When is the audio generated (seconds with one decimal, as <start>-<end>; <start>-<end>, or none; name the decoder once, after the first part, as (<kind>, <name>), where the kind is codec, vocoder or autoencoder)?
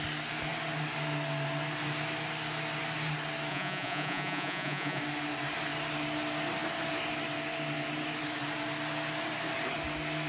3.5-5.0 (vocoder, Vocos)